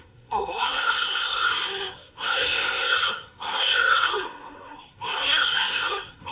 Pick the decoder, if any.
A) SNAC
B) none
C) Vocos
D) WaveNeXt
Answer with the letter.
A